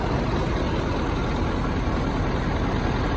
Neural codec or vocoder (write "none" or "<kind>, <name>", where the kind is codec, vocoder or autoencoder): none